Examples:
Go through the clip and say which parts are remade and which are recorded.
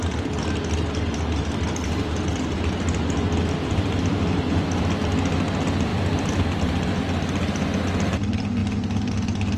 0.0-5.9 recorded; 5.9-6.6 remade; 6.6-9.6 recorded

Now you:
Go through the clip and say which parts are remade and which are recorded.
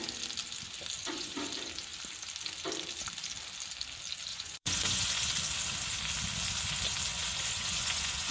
0.0-1.0 recorded; 1.0-1.5 remade; 1.5-4.3 recorded; 4.3-5.3 remade; 5.3-7.1 recorded; 7.1-8.3 remade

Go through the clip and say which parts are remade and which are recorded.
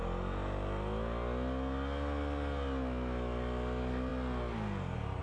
0.0-5.2 recorded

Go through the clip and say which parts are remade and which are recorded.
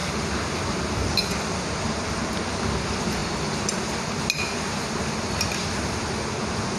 0.0-6.8 recorded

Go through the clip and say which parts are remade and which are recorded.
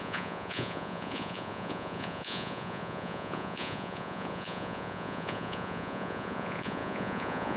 0.0-7.6 remade